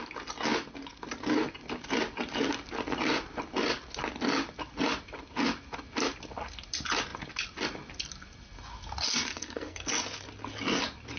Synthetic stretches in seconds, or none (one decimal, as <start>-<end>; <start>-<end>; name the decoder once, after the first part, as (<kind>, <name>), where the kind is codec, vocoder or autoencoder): 9.3-9.9 (codec, SNAC)